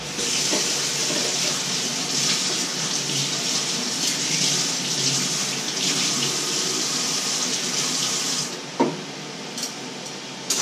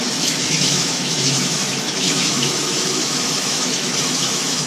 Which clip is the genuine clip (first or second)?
first